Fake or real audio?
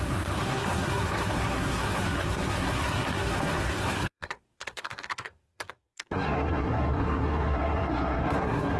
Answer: fake